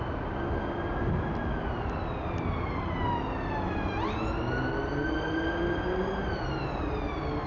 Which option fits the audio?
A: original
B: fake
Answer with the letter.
A